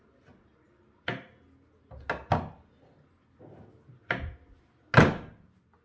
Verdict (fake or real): real